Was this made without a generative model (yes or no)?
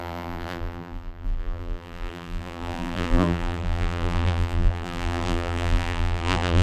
no